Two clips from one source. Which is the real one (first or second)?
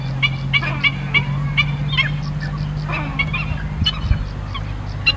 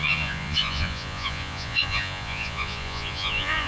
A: first